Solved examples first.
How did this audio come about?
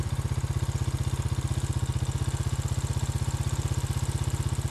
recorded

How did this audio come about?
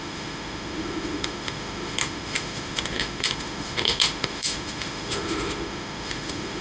remade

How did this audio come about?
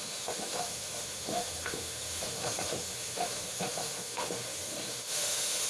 remade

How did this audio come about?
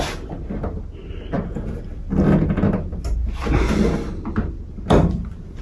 recorded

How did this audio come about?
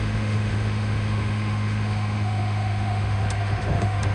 remade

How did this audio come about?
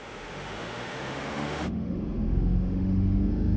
remade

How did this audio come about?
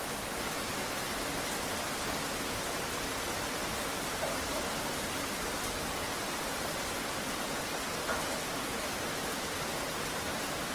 recorded